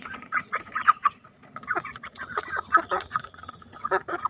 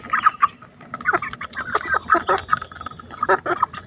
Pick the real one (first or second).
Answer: second